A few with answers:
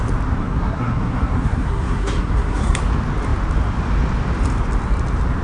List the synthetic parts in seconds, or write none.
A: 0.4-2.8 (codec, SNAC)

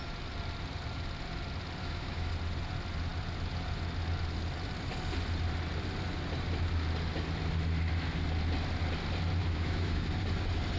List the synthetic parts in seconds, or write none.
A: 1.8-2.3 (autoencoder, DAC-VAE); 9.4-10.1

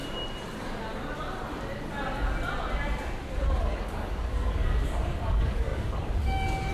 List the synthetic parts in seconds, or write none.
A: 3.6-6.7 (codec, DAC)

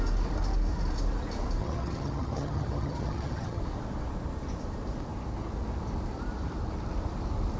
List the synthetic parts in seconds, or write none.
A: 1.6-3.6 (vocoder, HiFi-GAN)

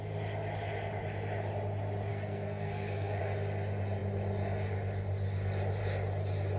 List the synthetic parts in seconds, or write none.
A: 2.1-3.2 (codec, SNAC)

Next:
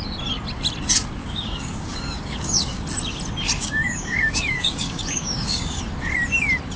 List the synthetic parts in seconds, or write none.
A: 1.2-2.9 (codec, DAC); 3.6-5.8